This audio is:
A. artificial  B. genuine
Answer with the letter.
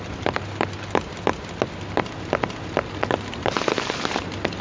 B